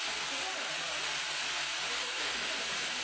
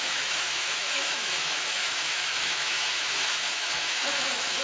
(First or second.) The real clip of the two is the first